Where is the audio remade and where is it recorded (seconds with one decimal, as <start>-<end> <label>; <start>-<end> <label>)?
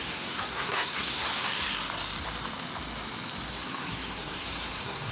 0.0-1.3 remade; 1.3-3.5 recorded; 3.5-5.1 remade